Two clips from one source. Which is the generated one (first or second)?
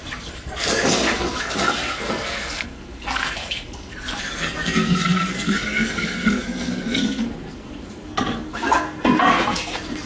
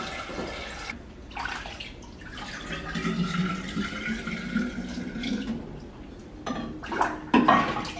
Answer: first